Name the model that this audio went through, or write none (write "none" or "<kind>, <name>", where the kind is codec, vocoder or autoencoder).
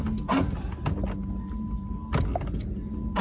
none